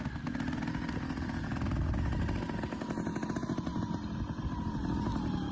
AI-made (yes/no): no